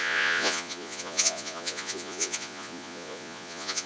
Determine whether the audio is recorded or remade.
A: remade